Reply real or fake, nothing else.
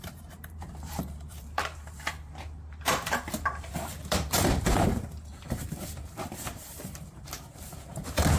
fake